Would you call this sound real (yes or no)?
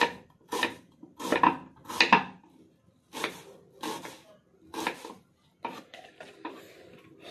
yes